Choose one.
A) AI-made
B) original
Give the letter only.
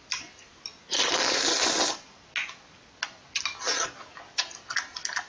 B